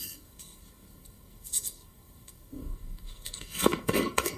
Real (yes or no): no